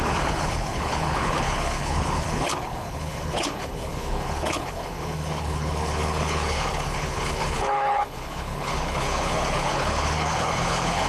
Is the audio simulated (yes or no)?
yes